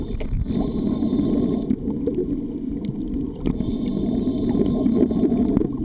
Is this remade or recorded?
recorded